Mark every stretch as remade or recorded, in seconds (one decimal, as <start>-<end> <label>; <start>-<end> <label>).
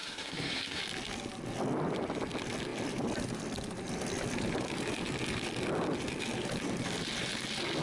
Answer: 0.0-0.8 remade; 0.8-7.8 recorded